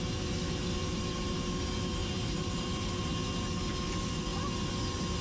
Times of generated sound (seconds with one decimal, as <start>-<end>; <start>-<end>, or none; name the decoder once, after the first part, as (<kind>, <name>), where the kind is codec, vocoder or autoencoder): 0.8-1.5 (vocoder, BigVGAN v2); 2.0-3.1